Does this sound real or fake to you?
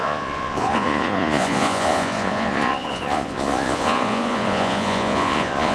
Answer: fake